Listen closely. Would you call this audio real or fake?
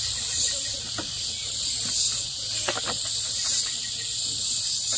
real